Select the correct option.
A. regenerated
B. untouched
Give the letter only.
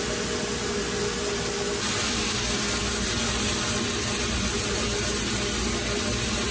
B